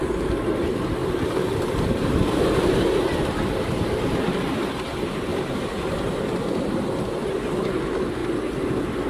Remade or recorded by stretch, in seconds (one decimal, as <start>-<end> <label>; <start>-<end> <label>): 0.0-1.0 recorded; 1.0-4.7 remade; 4.7-5.3 recorded; 5.3-6.6 remade; 6.6-9.1 recorded